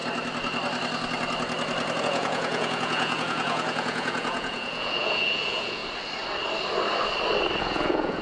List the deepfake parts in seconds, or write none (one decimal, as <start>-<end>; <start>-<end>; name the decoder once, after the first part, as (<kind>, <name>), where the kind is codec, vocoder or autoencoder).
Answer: 2.0-5.8 (vocoder, Vocos); 7.6-8.2